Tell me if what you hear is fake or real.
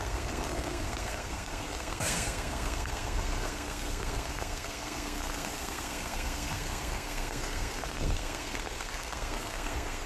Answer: fake